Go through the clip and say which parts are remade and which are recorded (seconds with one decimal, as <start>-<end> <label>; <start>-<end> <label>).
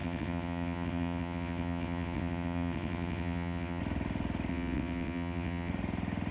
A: 0.0-3.8 remade; 3.8-4.5 recorded; 4.5-5.7 remade; 5.7-6.3 recorded